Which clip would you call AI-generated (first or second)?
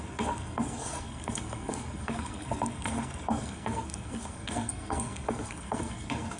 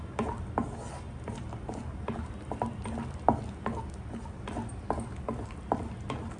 first